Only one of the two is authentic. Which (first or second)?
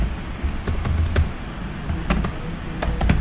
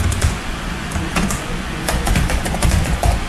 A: first